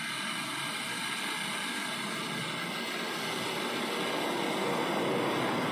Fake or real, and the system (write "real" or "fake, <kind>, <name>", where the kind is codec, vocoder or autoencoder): real